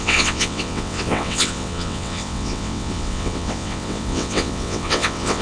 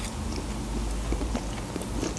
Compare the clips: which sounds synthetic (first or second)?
first